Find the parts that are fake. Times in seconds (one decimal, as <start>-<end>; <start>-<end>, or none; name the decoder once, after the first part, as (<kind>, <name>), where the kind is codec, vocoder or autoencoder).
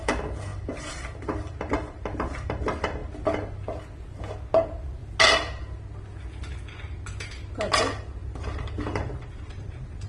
8.2-10.1 (vocoder, BigVGAN v2)